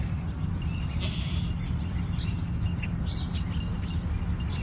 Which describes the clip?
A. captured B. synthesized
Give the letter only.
A